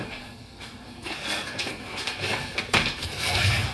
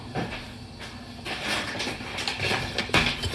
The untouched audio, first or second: second